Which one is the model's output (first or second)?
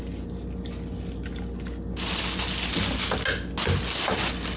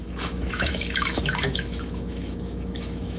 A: second